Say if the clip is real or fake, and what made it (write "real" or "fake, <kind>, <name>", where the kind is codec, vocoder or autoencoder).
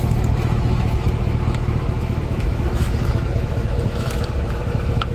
fake, autoencoder, DAC-VAE